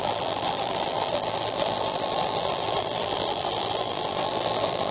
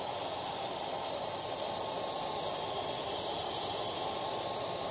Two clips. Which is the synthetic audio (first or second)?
first